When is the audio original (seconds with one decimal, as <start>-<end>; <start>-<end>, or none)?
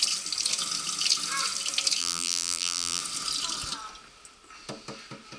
0.0-2.0; 3.0-5.4